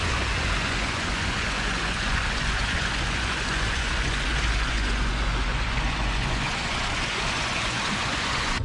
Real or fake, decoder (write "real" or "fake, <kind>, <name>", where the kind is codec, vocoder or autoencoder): fake, vocoder, Vocos